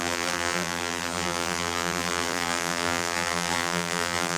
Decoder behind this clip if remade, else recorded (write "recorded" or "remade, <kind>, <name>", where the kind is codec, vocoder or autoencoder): remade, vocoder, BigVGAN v2